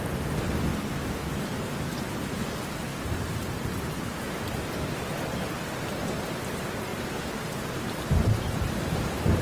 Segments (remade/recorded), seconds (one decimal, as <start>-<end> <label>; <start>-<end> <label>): 0.0-2.9 recorded; 2.9-4.2 remade; 4.2-6.9 recorded; 6.9-7.8 remade; 7.8-9.4 recorded